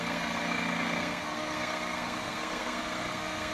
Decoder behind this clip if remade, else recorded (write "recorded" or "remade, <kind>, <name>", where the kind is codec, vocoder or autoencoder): remade, codec, SNAC